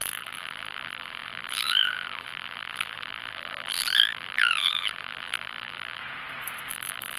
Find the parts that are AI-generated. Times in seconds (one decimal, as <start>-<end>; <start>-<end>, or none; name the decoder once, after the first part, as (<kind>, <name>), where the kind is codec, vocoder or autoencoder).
0.0-6.0 (vocoder, BigVGAN v2); 6.7-7.2